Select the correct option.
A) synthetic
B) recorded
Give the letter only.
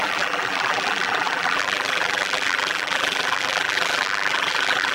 A